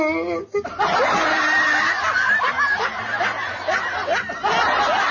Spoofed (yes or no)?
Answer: no